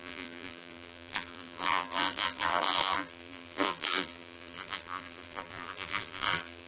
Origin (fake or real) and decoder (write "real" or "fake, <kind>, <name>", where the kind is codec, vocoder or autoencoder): fake, vocoder, BigVGAN v2